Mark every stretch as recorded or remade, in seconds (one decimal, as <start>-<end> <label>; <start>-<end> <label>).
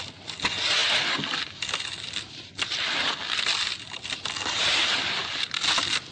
0.0-6.1 recorded